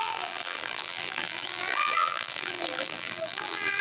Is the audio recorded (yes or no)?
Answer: no